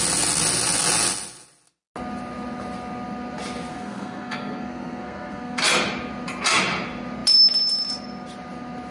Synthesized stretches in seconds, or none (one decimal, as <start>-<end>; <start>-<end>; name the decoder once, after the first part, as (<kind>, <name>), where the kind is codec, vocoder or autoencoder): 3.7-5.6 (codec, SNAC)